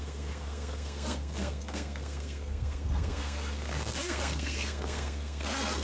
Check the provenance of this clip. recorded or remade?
remade